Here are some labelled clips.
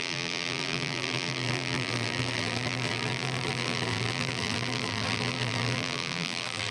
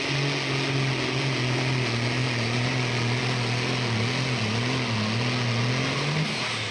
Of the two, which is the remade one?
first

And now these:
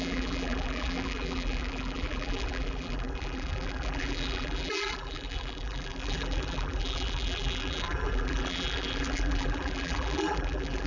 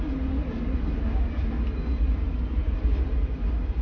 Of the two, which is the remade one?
first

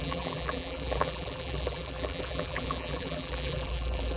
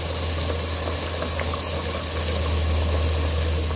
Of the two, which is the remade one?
first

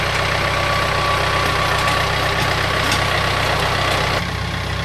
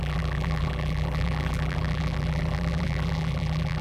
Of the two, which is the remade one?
second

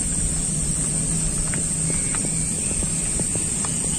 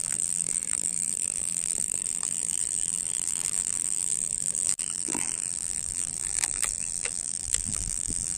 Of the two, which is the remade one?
second